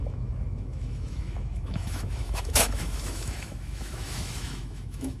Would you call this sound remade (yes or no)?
yes